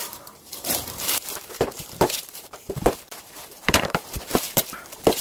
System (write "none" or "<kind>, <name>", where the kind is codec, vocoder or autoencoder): vocoder, BigVGAN v2